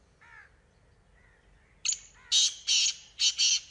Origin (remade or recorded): recorded